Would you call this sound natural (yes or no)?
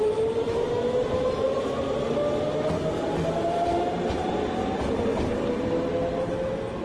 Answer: yes